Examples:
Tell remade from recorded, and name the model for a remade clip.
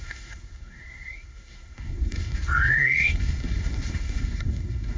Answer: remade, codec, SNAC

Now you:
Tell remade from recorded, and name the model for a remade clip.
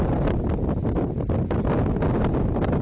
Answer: recorded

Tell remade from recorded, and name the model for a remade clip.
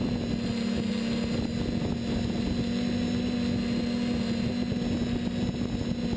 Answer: recorded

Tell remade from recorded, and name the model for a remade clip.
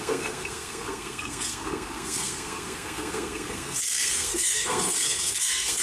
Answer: remade, codec, SNAC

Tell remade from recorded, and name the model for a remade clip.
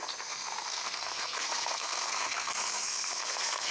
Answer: remade, codec, SNAC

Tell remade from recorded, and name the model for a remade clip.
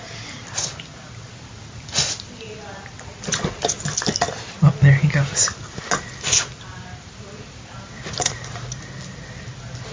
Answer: recorded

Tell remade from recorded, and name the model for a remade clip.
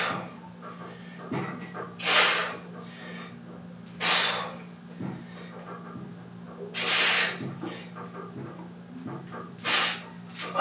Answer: recorded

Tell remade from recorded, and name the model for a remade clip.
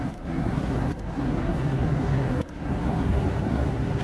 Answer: remade, codec, SNAC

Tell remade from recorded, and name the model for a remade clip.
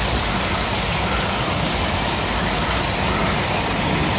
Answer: recorded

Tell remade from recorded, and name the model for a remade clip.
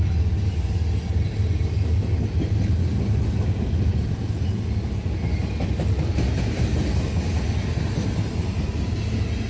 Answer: recorded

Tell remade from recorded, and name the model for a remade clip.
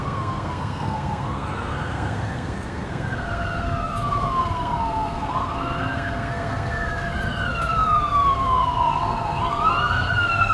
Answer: remade, codec, SNAC